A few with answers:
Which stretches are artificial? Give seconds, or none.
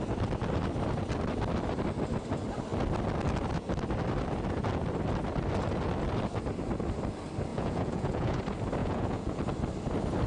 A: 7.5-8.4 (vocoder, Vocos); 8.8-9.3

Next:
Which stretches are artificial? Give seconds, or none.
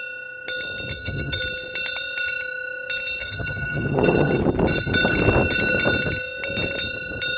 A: 0.9-1.4 (vocoder, HiFi-GAN); 3.2-4.4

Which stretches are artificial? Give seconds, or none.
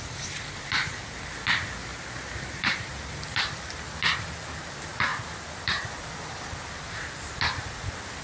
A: 1.9-2.9 (vocoder, BigVGAN v2); 5.1-5.9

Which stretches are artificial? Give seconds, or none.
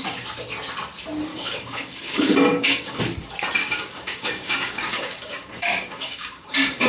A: 1.3-3.0 (codec, DAC); 3.6-6.9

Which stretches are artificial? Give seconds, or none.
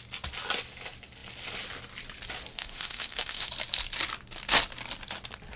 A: 2.5-3.5 (autoencoder, DAC-VAE)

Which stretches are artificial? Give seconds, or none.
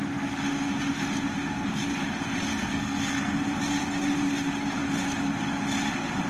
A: 2.5-3.3 (codec, SNAC)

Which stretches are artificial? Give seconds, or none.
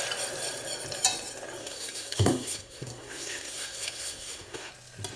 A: 1.6-4.7 (codec, SNAC)